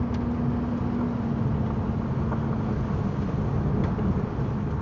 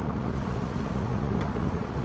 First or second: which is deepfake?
second